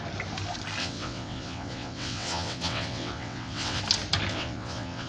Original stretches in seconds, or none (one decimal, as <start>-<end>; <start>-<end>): 0.0-0.8; 3.8-4.3